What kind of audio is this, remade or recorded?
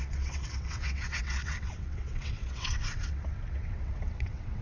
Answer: remade